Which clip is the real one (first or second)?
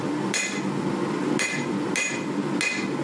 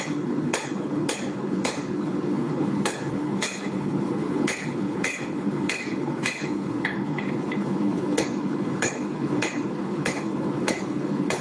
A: first